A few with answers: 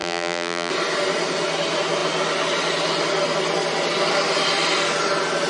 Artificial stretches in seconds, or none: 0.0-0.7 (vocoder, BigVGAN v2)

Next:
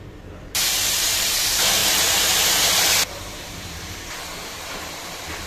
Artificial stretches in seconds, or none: 0.0-1.8 (vocoder, BigVGAN v2); 3.1-5.5

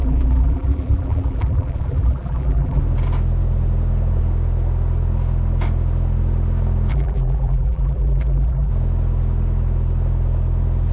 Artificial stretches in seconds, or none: 0.0-2.8 (vocoder, BigVGAN v2); 6.9-8.7

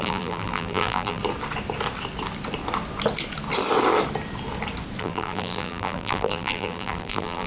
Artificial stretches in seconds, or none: 0.0-1.2 (vocoder, BigVGAN v2); 5.0-7.5

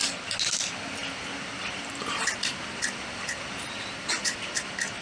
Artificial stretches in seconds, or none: 1.5-4.5 (vocoder, BigVGAN v2)

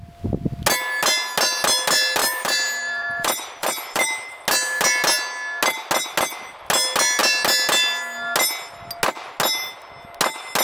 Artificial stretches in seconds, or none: 2.2-4.4 (vocoder, BigVGAN v2)